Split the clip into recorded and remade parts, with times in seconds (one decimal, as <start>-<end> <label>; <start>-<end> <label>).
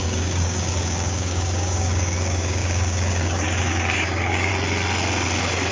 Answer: 0.0-4.5 remade; 4.5-5.7 recorded